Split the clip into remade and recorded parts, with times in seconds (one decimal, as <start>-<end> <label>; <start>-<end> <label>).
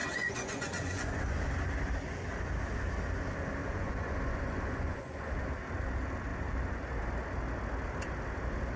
0.0-1.4 remade; 1.4-3.6 recorded; 3.6-5.3 remade; 5.3-8.8 recorded